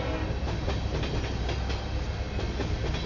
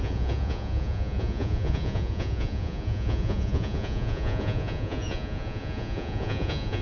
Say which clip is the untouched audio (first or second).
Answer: first